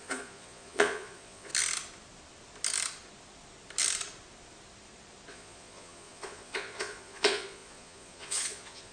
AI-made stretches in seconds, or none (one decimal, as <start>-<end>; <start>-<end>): 0.0-1.5; 5.3-8.9